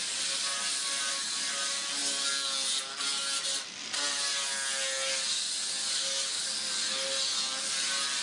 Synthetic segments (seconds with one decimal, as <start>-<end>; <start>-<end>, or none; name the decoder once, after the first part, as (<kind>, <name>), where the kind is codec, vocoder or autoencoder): none